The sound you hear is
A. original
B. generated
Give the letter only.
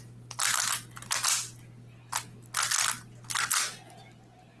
A